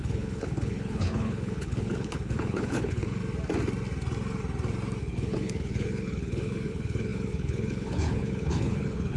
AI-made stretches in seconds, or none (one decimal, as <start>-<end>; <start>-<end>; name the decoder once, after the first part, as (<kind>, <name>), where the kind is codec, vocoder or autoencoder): 0.0-3.2 (codec, HILCodec); 5.0-9.2